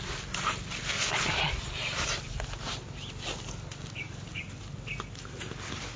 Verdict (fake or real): real